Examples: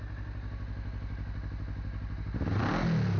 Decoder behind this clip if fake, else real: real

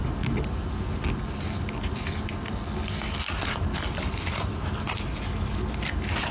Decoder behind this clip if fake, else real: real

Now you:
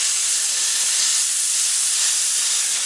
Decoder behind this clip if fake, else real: real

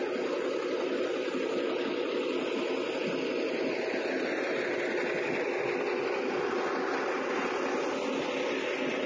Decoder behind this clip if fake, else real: real